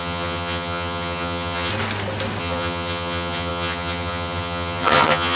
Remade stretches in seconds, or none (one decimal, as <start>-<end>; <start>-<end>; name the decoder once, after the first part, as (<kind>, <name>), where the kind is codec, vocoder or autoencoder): 0.0-1.7 (vocoder, HiFi-GAN); 2.4-5.4